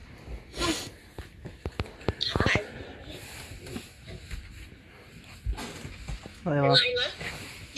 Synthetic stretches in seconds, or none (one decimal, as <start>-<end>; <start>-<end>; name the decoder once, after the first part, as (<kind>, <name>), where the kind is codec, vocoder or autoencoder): 6.3-6.9 (autoencoder, DAC-VAE)